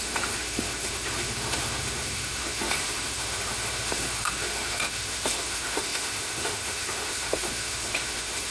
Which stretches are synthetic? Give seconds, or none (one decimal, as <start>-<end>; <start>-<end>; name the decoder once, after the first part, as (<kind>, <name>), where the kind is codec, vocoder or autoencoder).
0.0-8.5 (autoencoder, DAC-VAE)